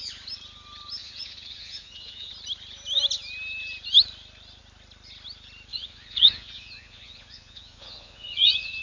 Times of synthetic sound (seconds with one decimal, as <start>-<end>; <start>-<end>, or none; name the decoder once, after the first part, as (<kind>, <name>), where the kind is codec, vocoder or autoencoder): 1.0-2.3 (vocoder, Vocos); 5.7-8.8